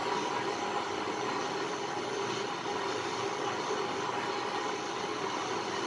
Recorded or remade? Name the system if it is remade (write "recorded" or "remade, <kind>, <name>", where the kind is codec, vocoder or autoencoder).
recorded